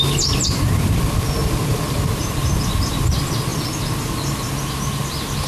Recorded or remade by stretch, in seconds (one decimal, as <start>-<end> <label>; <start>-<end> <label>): 0.0-1.4 recorded; 1.4-2.5 remade; 2.5-5.5 recorded